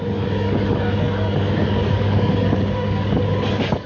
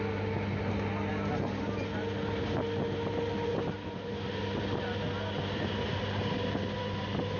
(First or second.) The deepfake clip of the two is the first